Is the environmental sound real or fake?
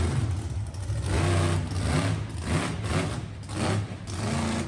real